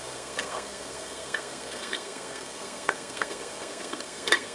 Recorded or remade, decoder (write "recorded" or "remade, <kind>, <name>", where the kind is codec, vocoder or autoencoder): remade, codec, SNAC